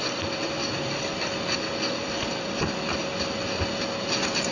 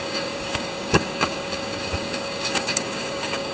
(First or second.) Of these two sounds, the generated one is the second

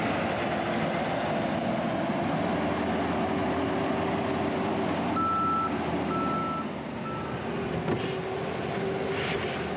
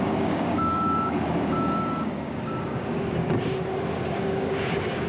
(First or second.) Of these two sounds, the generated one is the second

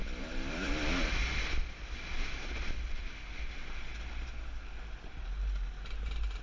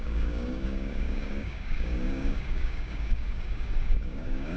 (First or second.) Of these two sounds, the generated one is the second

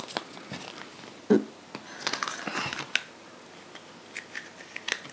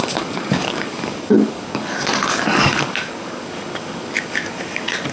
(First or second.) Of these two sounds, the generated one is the second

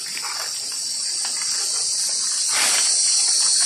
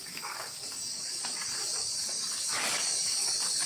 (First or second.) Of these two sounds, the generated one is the second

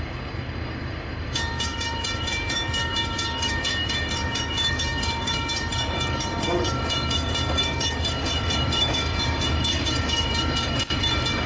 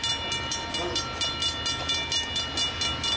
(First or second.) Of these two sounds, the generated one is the first